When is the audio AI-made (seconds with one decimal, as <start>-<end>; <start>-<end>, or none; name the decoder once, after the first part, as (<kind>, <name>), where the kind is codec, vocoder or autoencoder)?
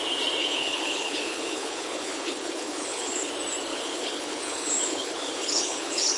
0.4-3.3 (codec, HILCodec); 3.7-6.2